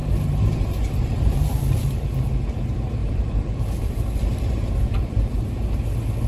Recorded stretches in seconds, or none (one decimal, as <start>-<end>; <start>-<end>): 1.8-3.0; 5.8-6.3